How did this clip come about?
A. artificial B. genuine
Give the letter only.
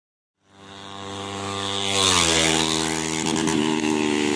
B